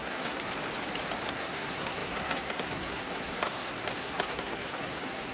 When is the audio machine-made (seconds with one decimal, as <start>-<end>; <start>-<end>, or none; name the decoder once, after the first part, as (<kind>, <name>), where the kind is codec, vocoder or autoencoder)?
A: 0.0-0.5 (codec, SNAC); 1.3-5.3